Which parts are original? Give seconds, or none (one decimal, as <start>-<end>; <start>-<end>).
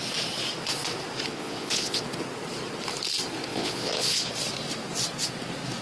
0.0-1.3; 2.0-3.5; 4.3-5.8